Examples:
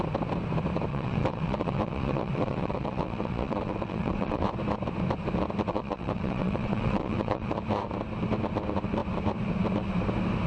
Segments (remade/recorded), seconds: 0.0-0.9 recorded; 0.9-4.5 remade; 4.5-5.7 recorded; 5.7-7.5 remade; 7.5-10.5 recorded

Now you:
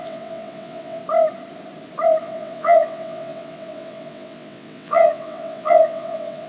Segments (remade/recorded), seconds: 0.0-1.0 remade; 1.0-2.2 recorded; 2.2-6.5 remade

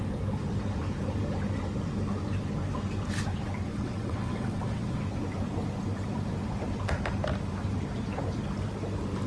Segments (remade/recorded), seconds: 0.0-3.7 recorded; 3.7-5.0 remade; 5.0-9.3 recorded

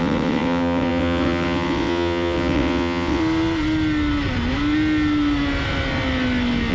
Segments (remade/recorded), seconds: 0.0-3.2 remade; 3.2-6.7 recorded

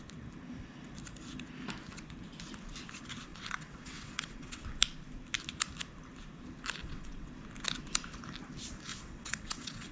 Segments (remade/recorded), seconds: 0.0-3.3 recorded; 3.3-4.6 remade; 4.6-6.8 recorded; 6.8-7.3 remade; 7.3-8.9 recorded; 8.9-9.9 remade

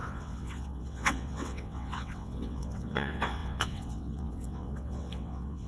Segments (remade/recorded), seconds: 0.0-5.7 remade

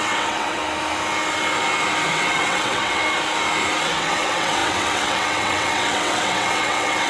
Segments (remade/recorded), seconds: 0.0-0.6 remade; 0.6-2.1 recorded; 2.1-3.0 remade; 3.0-3.8 recorded; 3.8-7.1 remade

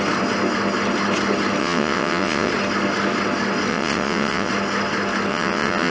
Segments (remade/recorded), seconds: 0.0-1.6 recorded; 1.6-2.5 remade; 2.5-3.7 recorded; 3.7-4.5 remade; 4.5-5.3 recorded; 5.3-5.9 remade